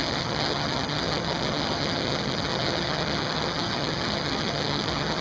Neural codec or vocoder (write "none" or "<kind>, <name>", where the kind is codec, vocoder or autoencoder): vocoder, HiFi-GAN